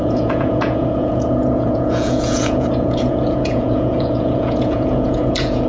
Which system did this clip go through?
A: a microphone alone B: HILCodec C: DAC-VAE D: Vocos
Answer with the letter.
D